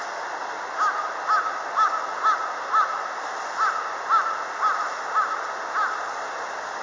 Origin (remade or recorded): recorded